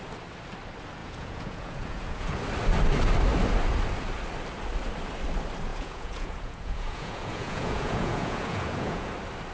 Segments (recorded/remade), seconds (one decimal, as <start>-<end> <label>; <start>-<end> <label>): 0.0-1.0 recorded; 1.0-2.4 remade; 2.4-5.7 recorded; 5.7-9.1 remade; 9.1-9.5 recorded